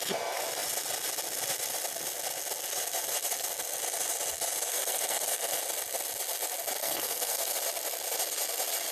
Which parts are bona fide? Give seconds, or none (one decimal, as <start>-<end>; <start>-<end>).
0.0-4.7; 5.6-6.8; 7.6-8.9